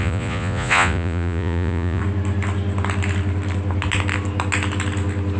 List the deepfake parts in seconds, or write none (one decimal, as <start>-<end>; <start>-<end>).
0.0-2.0